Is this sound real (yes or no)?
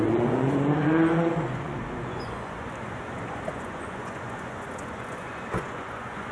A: no